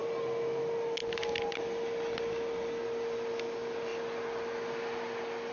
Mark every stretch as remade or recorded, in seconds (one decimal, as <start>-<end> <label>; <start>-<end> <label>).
0.0-5.5 recorded